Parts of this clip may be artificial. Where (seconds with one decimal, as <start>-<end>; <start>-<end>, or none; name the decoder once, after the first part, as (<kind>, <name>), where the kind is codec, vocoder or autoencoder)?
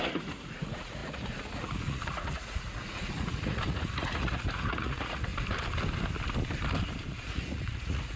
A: 0.0-5.3 (vocoder, Vocos); 7.1-8.2